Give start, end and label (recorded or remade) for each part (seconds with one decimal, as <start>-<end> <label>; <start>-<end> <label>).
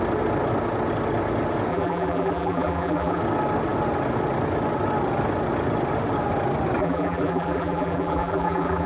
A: 0.0-1.7 recorded; 1.7-3.2 remade; 3.2-6.8 recorded; 6.8-8.9 remade